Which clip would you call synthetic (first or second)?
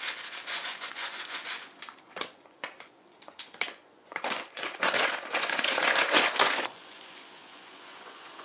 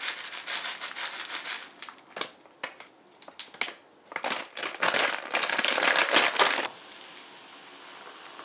first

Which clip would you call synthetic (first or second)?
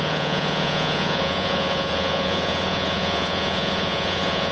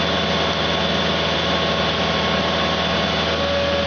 first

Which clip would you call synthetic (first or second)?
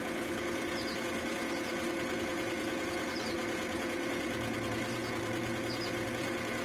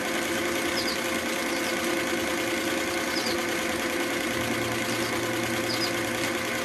first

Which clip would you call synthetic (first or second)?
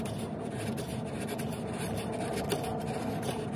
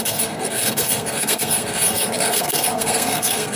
second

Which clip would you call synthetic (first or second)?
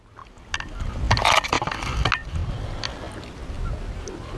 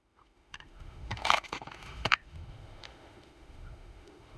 second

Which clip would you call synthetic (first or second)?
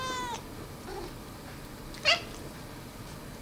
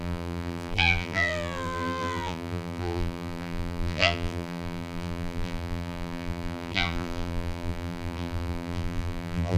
second